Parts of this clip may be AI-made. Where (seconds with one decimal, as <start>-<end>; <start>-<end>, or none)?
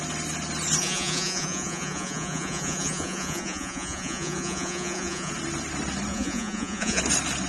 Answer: 0.8-5.3; 6.1-7.0